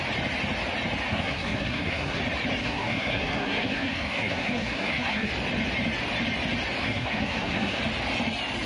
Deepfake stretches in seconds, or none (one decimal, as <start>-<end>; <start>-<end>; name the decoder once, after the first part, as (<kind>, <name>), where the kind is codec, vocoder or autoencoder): 1.1-2.2 (codec, SNAC); 2.6-5.3; 6.8-7.8